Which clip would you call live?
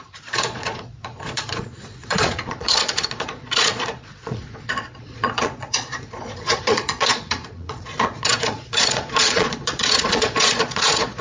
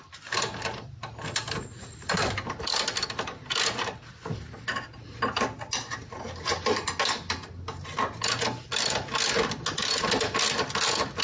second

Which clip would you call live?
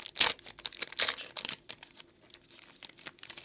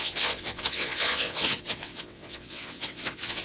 first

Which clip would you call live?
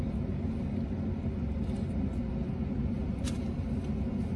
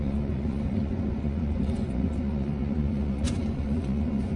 first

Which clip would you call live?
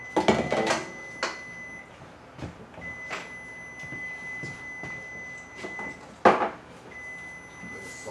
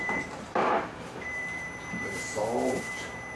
first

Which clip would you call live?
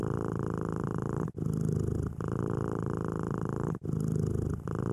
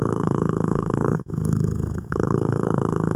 first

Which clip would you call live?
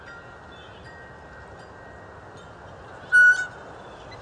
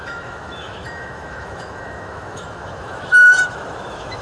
first